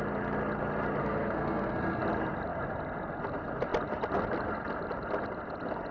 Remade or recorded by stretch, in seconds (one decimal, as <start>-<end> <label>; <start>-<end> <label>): 0.0-1.0 recorded; 1.0-2.0 remade; 2.0-5.9 recorded